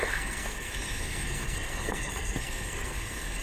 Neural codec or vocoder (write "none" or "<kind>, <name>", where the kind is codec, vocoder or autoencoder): codec, SNAC